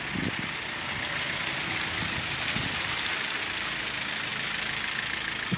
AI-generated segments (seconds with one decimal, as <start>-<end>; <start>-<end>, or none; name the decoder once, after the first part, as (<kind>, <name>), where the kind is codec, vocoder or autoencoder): 1.4-3.4 (vocoder, BigVGAN v2)